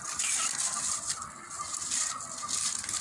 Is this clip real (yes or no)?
yes